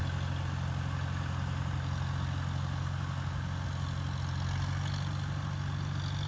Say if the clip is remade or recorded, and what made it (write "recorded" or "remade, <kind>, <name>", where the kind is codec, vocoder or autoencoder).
recorded